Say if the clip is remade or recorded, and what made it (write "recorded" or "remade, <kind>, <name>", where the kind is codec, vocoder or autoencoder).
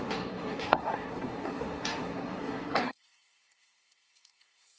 remade, codec, SNAC